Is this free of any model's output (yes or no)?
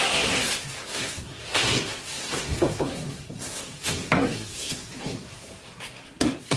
no